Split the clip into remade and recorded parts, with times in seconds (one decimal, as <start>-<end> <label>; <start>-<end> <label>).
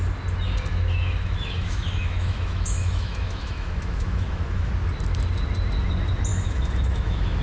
0.0-0.7 recorded; 0.7-4.7 remade; 4.7-6.3 recorded; 6.3-7.4 remade